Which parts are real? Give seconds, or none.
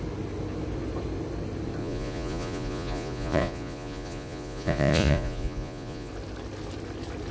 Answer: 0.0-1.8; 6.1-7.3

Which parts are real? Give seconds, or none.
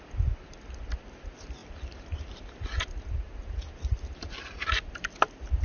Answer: 0.0-5.6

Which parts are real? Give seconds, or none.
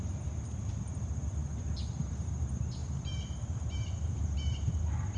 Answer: 0.0-2.8; 4.8-5.2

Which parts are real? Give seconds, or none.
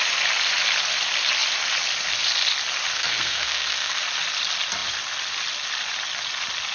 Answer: 0.0-2.9; 4.0-6.7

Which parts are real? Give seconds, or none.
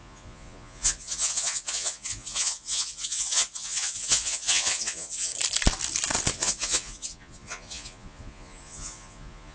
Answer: 5.3-6.3